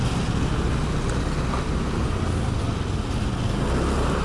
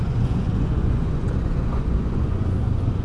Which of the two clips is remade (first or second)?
second